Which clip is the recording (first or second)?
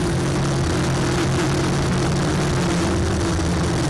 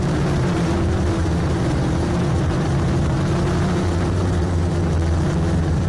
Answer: first